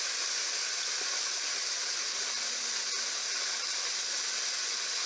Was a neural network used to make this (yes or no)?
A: no